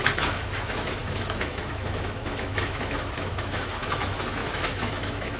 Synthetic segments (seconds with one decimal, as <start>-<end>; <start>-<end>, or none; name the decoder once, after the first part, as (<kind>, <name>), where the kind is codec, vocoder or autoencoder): 0.0-5.4 (autoencoder, DAC-VAE)